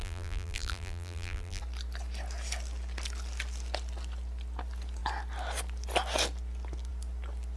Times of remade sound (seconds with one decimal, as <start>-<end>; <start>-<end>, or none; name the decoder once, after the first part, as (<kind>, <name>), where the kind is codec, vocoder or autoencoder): 0.0-1.6 (vocoder, BigVGAN v2)